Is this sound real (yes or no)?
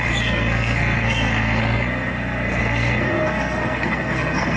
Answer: no